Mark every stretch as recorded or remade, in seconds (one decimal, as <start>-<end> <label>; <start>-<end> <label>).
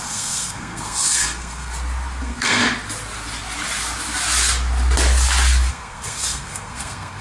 0.0-1.7 remade; 1.7-2.2 recorded; 2.2-2.6 remade; 2.6-5.7 recorded; 5.7-7.2 remade